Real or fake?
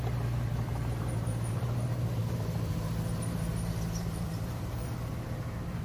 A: fake